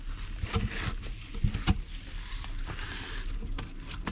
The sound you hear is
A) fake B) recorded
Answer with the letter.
B